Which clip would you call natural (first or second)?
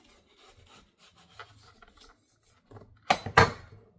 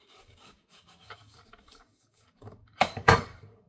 first